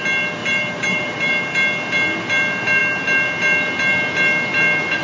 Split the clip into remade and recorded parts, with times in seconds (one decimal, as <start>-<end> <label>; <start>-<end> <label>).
0.0-0.4 recorded; 0.4-1.4 remade; 1.4-5.0 recorded